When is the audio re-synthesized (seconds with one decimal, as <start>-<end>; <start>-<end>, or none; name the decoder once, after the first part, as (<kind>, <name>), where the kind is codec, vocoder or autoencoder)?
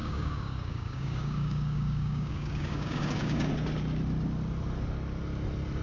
0.0-3.5 (codec, DAC)